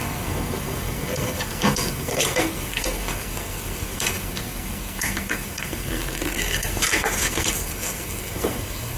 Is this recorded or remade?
remade